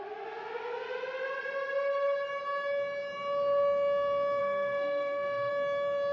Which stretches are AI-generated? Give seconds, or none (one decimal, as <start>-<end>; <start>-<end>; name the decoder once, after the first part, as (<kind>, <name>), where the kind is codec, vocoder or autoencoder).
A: 4.4-5.5 (codec, SNAC)